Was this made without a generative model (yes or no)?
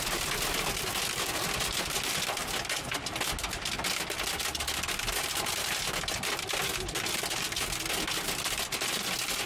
yes